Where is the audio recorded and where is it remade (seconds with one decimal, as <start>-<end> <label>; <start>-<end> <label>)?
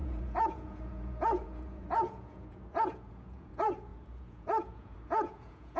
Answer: 0.0-5.8 remade